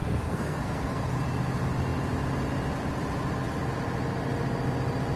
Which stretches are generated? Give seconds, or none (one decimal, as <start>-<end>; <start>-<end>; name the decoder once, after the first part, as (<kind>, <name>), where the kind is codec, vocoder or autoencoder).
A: 0.0-1.1 (codec, SNAC)